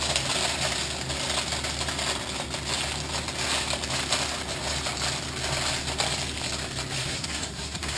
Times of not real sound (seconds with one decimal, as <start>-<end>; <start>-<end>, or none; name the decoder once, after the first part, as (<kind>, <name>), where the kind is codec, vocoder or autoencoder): 7.0-8.0 (codec, SNAC)